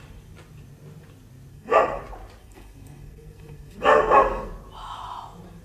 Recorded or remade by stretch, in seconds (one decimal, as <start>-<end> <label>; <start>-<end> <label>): 0.0-1.5 recorded; 1.5-2.0 remade; 2.0-2.4 recorded; 2.4-4.5 remade; 4.5-5.6 recorded